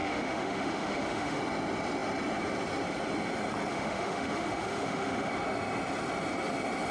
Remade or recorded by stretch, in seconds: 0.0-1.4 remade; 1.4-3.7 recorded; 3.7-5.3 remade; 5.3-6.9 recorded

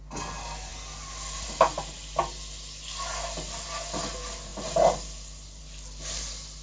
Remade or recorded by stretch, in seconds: 0.0-6.6 recorded

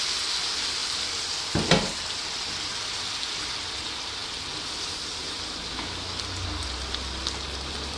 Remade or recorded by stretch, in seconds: 0.0-5.7 recorded; 5.7-6.2 remade; 6.2-8.0 recorded

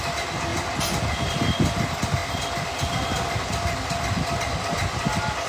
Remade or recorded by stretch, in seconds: 0.0-5.5 recorded